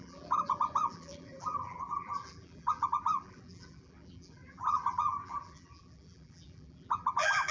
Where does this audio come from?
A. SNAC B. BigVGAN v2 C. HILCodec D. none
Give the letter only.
B